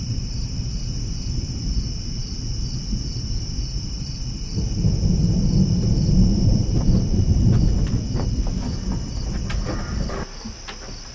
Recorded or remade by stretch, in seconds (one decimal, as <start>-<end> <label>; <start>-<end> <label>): 0.0-11.1 recorded